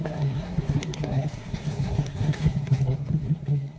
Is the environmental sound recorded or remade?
remade